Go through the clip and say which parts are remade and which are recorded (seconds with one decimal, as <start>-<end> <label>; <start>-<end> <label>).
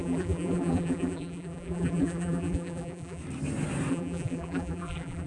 0.0-3.2 remade; 3.2-3.9 recorded; 3.9-5.3 remade